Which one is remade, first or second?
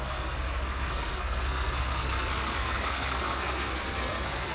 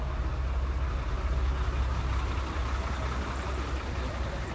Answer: first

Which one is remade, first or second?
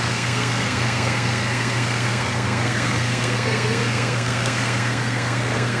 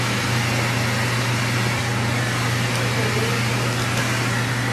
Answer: first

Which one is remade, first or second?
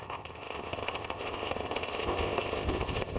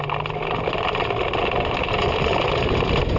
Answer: first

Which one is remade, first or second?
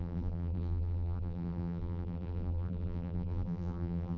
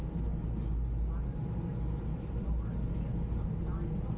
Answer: first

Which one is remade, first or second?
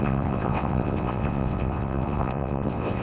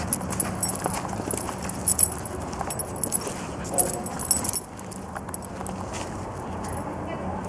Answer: first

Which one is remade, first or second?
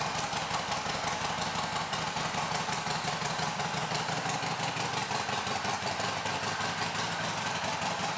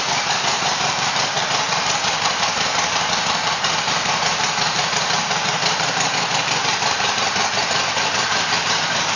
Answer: second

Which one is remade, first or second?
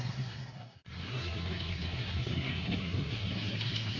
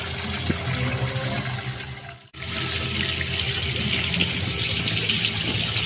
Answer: first